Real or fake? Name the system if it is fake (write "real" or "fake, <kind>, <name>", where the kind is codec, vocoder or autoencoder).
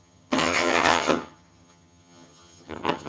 fake, vocoder, HiFi-GAN